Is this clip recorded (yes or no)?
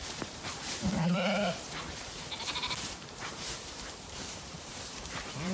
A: no